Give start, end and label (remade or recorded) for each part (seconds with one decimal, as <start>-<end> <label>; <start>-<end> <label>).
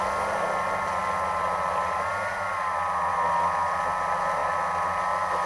0.0-5.5 recorded